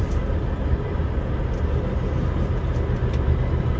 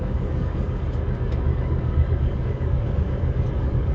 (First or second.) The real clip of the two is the first